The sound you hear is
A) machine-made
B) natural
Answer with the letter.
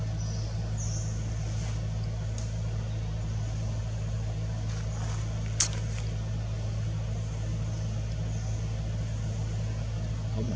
B